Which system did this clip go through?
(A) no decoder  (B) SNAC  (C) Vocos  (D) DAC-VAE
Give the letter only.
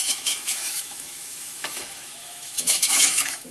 D